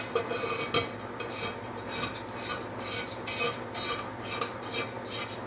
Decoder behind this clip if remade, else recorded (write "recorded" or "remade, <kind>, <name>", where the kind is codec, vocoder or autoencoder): recorded